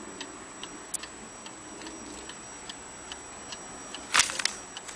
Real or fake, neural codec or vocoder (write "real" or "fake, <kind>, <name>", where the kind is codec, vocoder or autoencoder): real